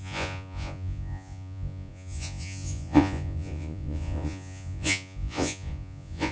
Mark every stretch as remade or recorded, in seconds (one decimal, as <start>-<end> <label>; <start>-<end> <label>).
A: 0.0-6.3 remade